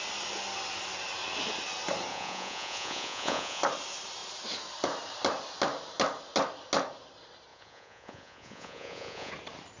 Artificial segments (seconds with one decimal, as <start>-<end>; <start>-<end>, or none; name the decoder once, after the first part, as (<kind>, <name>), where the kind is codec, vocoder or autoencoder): 2.1-3.6 (vocoder, Vocos); 7.5-9.3